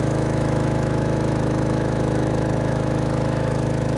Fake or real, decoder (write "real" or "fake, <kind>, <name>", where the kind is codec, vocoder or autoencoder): fake, autoencoder, DAC-VAE